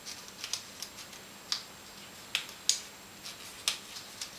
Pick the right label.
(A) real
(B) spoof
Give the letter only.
A